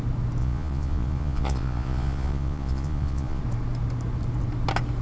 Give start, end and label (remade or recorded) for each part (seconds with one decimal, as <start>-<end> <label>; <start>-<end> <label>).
0.0-0.4 recorded; 0.4-3.4 remade; 3.4-5.0 recorded